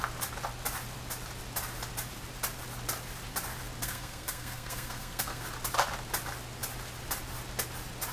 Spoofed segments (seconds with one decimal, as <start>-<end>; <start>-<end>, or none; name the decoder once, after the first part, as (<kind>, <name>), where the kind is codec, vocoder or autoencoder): 3.8-5.4 (codec, SNAC)